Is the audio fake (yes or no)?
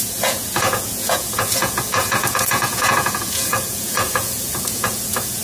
yes